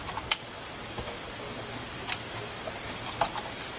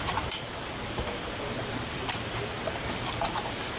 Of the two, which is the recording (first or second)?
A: first